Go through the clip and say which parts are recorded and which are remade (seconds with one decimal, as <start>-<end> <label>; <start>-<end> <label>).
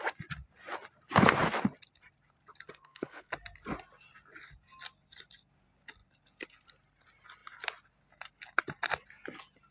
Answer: 0.0-2.7 recorded; 2.7-3.3 remade; 3.3-9.7 recorded